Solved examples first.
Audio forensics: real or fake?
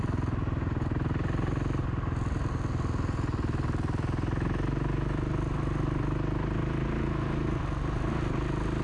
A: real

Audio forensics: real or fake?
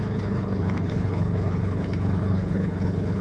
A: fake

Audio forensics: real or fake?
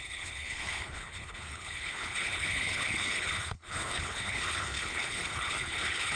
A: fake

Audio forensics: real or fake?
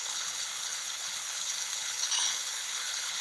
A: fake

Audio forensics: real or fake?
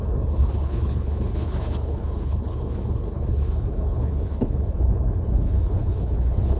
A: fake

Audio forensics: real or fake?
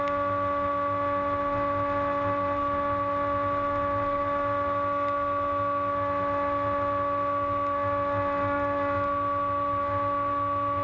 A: real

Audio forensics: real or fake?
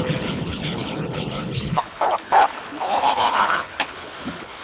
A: fake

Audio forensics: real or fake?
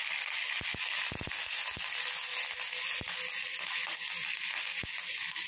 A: real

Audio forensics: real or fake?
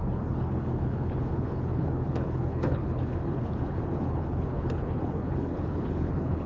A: fake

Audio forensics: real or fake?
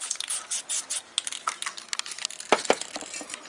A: real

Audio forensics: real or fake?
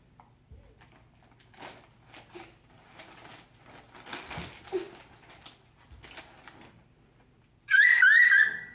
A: real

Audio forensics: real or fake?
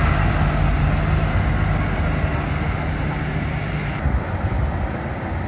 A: real